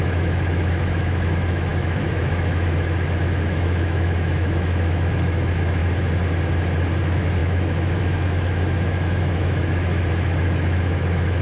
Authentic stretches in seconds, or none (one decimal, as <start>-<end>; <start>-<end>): 5.8-7.0